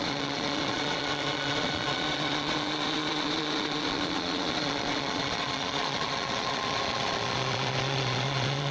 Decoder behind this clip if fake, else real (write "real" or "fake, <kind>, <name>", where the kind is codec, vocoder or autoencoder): fake, vocoder, Vocos